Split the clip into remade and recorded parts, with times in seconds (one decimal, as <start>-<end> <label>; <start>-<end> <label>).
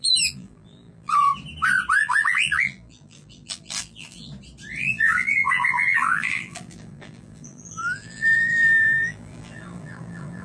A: 0.0-1.3 remade; 1.3-2.0 recorded; 2.0-4.3 remade; 4.3-4.8 recorded; 4.8-10.4 remade